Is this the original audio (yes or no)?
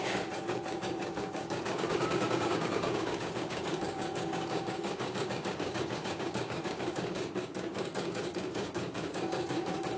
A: no